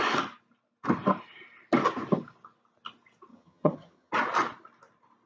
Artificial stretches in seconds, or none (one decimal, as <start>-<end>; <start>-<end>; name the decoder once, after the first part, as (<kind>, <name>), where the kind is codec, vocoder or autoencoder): 3.3-4.1 (vocoder, HiFi-GAN)